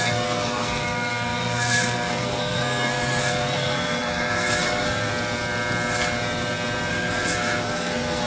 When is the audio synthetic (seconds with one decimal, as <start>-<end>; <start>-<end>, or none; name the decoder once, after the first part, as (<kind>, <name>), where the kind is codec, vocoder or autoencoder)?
0.0-5.1 (codec, SNAC); 6.9-8.3